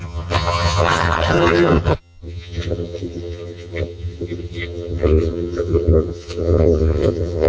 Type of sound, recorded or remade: remade